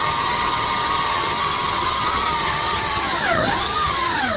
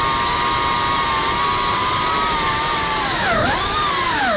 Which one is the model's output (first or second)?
first